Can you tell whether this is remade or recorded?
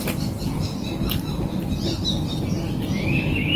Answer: recorded